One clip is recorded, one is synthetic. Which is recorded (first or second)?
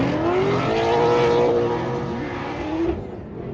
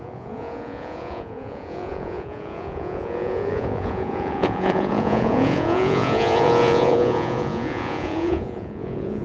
first